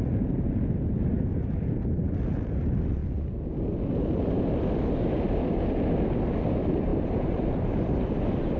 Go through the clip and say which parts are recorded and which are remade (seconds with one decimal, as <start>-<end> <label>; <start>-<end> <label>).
0.0-1.3 remade; 1.3-2.5 recorded; 2.5-3.0 remade; 3.0-6.5 recorded; 6.5-8.6 remade